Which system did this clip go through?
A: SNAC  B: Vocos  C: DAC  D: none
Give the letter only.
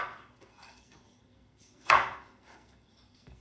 A